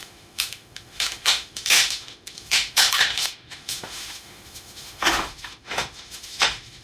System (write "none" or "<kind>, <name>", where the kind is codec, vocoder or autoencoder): autoencoder, DAC-VAE